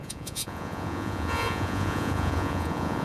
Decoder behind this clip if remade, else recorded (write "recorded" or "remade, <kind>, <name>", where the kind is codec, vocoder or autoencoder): remade, vocoder, Vocos